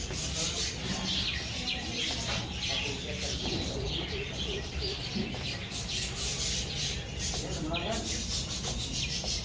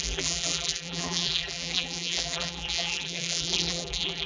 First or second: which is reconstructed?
second